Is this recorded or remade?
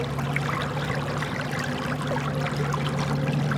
recorded